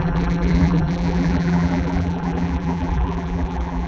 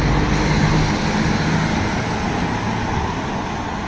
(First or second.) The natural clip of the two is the second